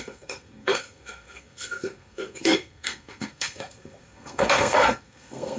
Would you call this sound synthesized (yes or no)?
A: yes